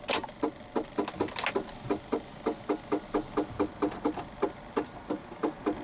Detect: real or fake real